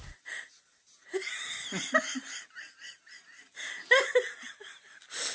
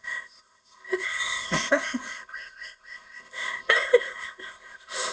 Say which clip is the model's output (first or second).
second